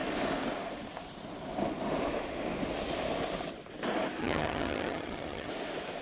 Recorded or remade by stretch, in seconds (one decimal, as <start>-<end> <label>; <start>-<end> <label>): 0.0-4.2 recorded; 4.2-5.5 remade; 5.5-6.0 recorded